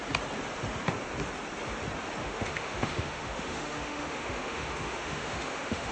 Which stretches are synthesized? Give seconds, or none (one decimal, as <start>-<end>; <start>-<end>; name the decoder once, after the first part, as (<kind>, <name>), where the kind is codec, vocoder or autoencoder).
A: 2.2-5.9 (autoencoder, DAC-VAE)